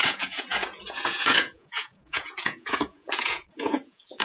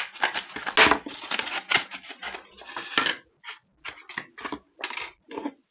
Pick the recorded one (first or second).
second